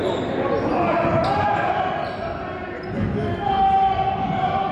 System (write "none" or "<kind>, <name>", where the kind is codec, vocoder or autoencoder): none